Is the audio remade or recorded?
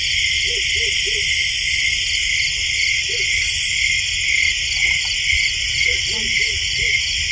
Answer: recorded